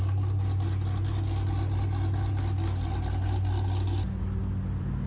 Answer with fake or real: real